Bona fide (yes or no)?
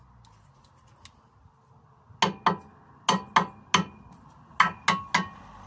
yes